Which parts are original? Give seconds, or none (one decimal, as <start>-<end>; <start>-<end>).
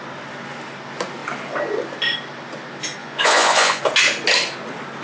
0.0-3.0; 3.8-5.0